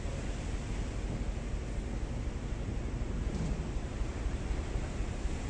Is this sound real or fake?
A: real